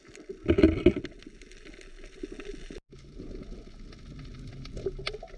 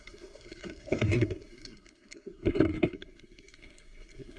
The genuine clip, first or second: first